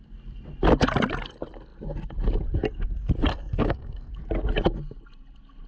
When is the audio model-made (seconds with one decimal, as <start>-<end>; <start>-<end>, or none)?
3.3-4.1